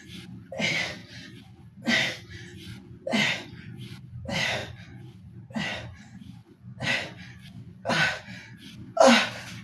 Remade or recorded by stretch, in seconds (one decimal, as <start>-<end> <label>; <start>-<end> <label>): 0.0-2.5 recorded; 2.5-4.0 remade; 4.0-4.6 recorded; 4.6-5.2 remade; 5.2-6.4 recorded; 6.4-7.9 remade; 7.9-9.6 recorded